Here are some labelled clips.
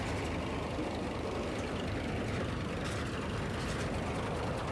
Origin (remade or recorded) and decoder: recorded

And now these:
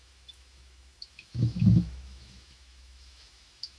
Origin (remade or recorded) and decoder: remade, autoencoder, DAC-VAE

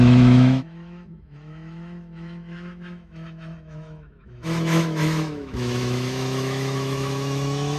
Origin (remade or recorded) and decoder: remade, autoencoder, DAC-VAE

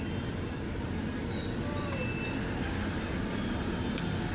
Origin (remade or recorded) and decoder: recorded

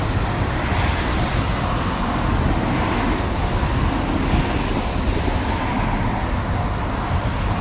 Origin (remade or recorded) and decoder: recorded